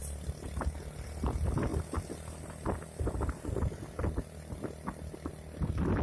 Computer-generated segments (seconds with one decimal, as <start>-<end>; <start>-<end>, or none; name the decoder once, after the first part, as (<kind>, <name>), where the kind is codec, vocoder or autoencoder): none